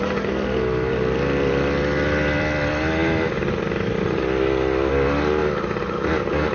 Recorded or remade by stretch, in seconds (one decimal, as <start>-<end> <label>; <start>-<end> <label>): 0.0-3.0 recorded; 3.0-3.6 remade; 3.6-5.4 recorded; 5.4-5.9 remade; 5.9-6.5 recorded